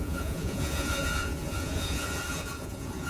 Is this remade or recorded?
remade